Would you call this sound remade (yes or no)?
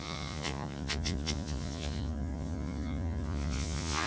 yes